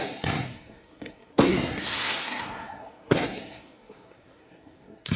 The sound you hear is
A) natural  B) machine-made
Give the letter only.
B